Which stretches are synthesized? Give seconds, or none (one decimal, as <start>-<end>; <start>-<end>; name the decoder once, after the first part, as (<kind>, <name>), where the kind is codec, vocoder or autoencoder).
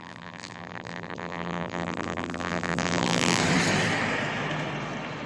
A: 0.0-3.4 (vocoder, BigVGAN v2)